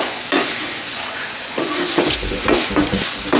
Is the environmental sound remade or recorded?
remade